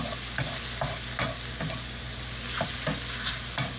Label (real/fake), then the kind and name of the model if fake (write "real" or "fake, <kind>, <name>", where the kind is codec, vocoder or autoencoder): real